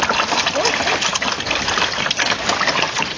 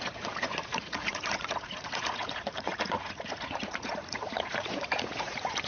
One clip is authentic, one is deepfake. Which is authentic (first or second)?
first